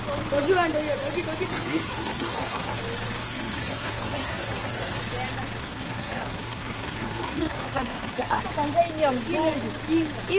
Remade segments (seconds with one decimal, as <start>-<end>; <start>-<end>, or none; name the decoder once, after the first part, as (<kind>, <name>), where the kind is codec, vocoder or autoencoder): 1.5-2.8 (codec, SNAC); 3.2-5.0; 5.6-8.4